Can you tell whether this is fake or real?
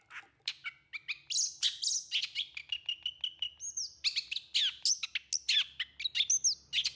real